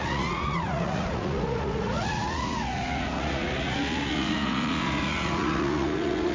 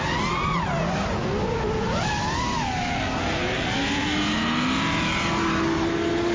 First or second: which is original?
second